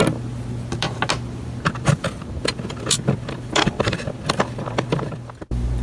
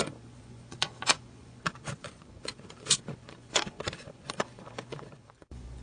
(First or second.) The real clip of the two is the first